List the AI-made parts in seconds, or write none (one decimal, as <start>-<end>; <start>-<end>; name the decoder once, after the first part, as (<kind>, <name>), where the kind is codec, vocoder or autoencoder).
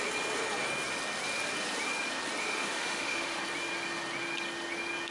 2.4-3.4 (autoencoder, DAC-VAE)